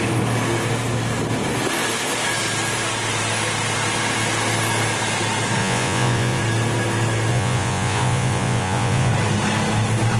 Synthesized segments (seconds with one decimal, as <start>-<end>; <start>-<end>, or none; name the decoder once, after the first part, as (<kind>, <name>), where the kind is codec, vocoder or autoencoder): 5.6-6.4 (vocoder, Vocos); 7.3-9.1